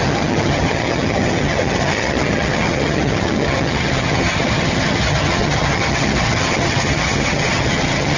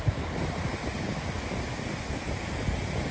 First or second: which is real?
second